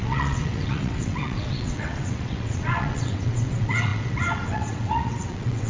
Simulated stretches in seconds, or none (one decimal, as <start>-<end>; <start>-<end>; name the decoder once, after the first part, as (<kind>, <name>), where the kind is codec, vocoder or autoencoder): 0.0-5.7 (vocoder, WaveNeXt)